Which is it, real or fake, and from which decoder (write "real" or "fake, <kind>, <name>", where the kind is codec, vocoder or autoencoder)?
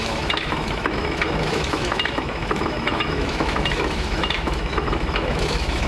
fake, autoencoder, DAC-VAE